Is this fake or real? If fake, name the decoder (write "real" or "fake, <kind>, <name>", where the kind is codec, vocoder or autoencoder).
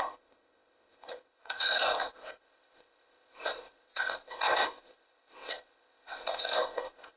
fake, codec, ZipCodec